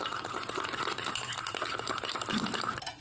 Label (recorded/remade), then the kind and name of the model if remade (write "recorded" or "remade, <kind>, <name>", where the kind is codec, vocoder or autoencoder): recorded